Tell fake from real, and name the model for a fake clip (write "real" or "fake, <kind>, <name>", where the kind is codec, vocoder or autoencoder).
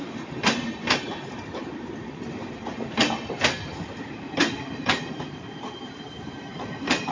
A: fake, vocoder, BigVGAN v2